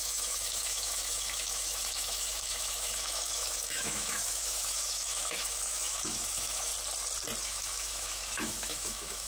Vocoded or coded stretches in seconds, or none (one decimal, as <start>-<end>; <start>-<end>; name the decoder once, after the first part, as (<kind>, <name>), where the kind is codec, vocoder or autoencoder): 0.0-6.7 (autoencoder, DAC-VAE); 7.4-9.3